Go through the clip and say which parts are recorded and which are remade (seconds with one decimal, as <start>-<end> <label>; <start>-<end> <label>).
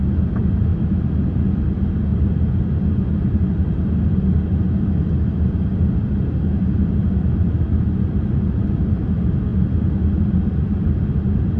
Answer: 0.0-0.7 recorded; 0.7-1.2 remade; 1.2-11.6 recorded